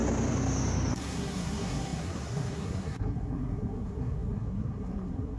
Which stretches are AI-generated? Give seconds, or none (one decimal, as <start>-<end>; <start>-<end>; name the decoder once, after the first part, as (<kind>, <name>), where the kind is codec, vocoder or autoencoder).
0.9-5.4 (codec, SNAC)